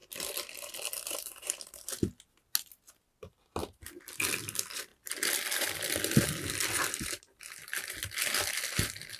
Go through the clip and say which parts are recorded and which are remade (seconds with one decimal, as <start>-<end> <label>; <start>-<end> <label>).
0.0-4.9 recorded; 4.9-6.3 remade; 6.3-9.2 recorded